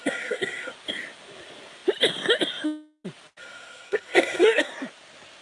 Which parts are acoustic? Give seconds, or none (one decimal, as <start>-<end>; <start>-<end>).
0.7-3.4; 4.7-5.4